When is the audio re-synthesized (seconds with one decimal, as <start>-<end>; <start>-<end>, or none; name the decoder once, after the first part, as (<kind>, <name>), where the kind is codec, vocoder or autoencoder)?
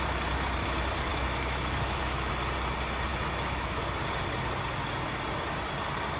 1.1-2.3 (autoencoder, DAC-VAE); 3.1-3.8